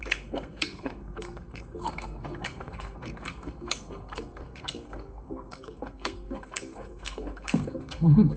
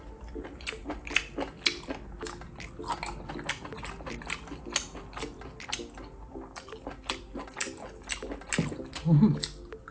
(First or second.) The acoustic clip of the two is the second